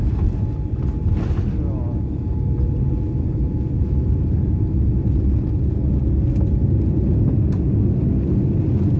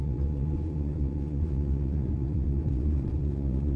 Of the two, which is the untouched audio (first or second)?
first